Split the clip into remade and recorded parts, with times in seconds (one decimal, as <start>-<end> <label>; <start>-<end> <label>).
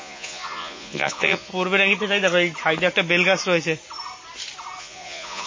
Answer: 0.0-1.5 remade; 1.5-4.8 recorded; 4.8-5.5 remade